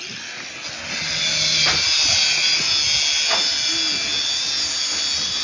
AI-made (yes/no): no